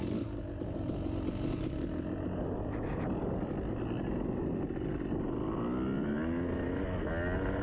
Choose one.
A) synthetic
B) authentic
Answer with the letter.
B